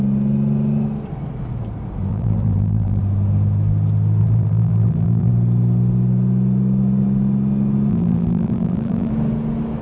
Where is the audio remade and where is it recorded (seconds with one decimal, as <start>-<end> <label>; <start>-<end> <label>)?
0.0-2.1 recorded; 2.1-3.0 remade; 3.0-4.2 recorded; 4.2-5.3 remade; 5.3-7.9 recorded; 7.9-9.1 remade; 9.1-9.8 recorded

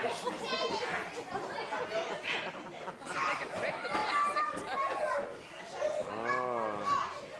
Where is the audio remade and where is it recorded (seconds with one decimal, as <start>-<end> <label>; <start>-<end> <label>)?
0.0-7.4 recorded

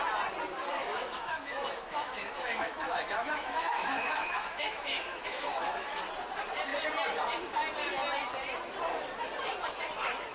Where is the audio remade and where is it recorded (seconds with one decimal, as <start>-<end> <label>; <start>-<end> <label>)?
0.0-0.9 recorded; 0.9-6.0 remade; 6.0-10.3 recorded

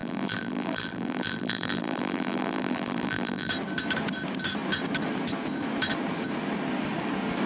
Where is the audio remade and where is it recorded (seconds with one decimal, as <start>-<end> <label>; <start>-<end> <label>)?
0.0-3.5 remade; 3.5-7.5 recorded

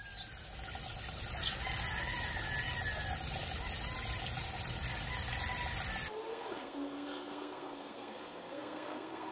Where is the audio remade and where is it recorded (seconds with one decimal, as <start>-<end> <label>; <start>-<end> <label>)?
0.0-6.3 recorded; 6.3-9.3 remade